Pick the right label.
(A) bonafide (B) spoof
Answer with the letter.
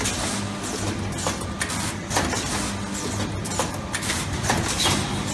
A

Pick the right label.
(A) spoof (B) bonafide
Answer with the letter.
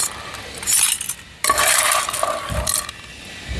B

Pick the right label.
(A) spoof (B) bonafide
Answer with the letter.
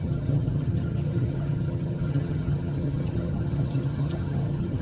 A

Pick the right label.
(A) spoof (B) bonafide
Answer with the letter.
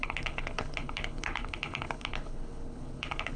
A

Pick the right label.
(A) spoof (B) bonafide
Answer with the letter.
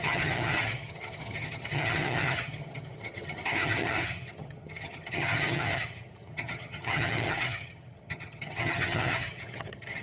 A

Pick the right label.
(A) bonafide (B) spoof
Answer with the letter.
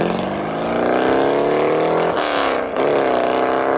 A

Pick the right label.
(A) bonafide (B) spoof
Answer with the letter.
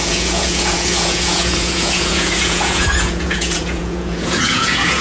B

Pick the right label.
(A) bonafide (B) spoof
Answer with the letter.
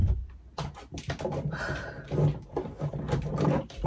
A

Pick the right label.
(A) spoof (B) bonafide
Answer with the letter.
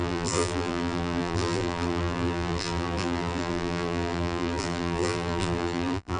A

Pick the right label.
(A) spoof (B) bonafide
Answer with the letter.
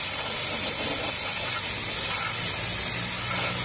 B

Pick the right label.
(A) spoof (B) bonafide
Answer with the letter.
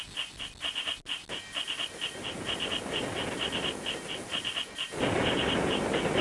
B